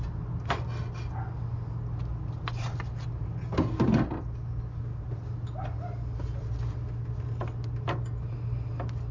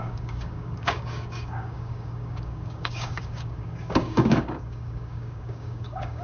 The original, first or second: first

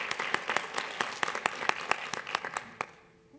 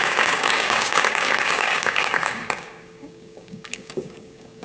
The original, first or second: first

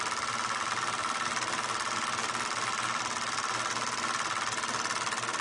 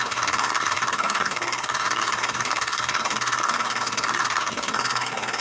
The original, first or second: first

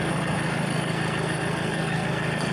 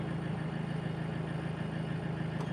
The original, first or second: second